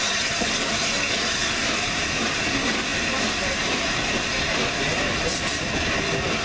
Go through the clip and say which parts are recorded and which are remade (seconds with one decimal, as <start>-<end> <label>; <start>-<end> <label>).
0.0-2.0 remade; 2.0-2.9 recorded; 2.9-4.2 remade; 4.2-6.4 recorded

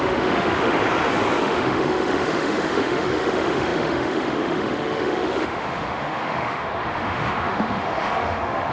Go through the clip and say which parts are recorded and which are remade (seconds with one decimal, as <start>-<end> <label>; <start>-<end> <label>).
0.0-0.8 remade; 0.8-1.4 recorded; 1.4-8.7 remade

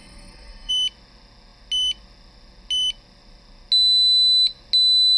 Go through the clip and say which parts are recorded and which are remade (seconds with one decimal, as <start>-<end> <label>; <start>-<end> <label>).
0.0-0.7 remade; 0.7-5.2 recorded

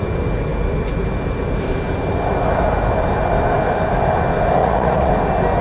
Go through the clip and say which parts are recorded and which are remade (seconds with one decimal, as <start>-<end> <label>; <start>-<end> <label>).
0.0-4.6 recorded; 4.6-5.1 remade; 5.1-5.6 recorded

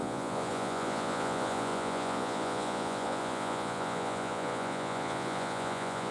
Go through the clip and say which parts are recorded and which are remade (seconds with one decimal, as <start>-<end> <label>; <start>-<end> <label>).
0.0-6.1 remade

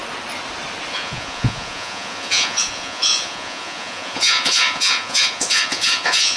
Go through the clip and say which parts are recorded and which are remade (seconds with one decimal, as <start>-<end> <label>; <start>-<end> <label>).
0.0-0.9 recorded; 0.9-6.4 remade

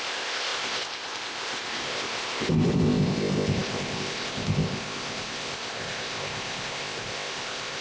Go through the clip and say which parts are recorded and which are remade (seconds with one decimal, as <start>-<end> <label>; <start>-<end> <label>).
0.0-7.8 remade

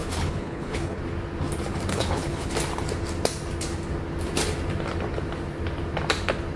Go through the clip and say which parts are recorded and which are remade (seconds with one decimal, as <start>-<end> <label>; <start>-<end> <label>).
0.0-1.0 remade; 1.0-1.9 recorded; 1.9-2.5 remade; 2.5-6.6 recorded